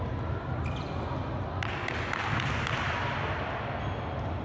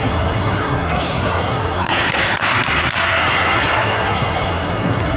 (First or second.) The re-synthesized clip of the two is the second